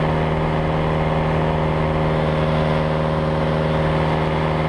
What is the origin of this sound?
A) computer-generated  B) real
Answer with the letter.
B